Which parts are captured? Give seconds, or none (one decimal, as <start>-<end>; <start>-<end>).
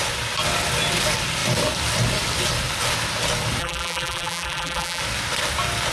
0.0-3.6; 5.0-5.9